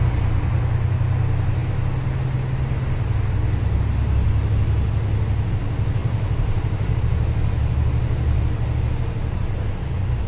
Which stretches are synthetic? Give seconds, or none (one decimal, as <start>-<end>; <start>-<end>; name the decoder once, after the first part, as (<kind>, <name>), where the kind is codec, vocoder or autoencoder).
6.0-7.0 (vocoder, BigVGAN v2)